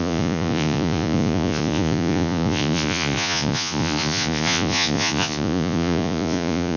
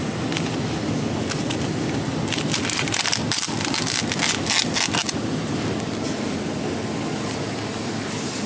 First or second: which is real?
second